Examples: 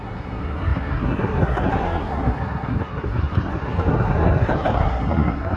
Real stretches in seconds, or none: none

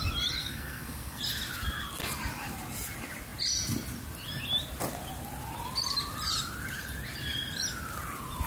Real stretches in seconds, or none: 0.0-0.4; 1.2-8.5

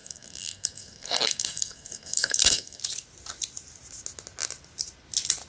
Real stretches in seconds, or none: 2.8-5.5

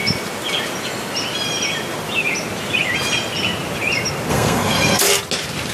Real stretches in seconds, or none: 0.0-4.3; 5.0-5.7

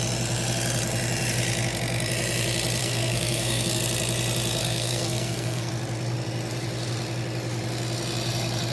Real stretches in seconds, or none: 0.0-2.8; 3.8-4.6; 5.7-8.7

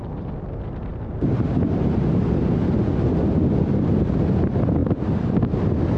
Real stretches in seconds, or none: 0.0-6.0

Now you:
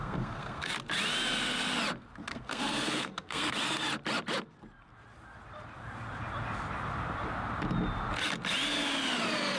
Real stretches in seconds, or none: 0.7-2.3; 3.5-9.6